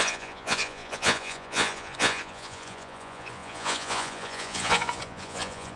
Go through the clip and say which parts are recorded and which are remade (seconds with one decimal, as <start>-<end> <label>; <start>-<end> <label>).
0.0-5.8 remade